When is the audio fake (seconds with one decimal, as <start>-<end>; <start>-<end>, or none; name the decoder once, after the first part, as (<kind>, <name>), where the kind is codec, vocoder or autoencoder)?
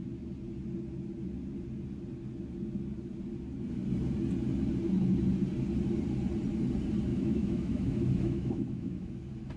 7.1-9.1 (autoencoder, DAC-VAE)